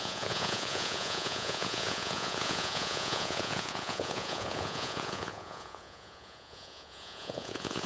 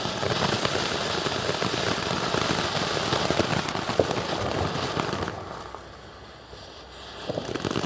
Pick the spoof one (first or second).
first